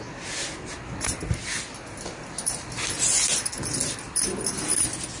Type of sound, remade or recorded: recorded